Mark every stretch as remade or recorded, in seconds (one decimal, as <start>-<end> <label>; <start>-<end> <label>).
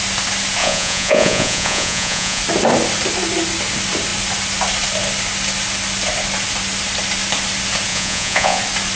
0.0-0.6 recorded; 0.6-2.4 remade; 2.4-7.9 recorded; 7.9-8.6 remade; 8.6-9.0 recorded